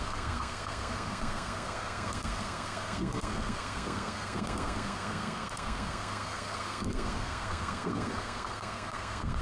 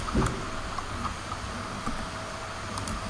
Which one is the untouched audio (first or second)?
second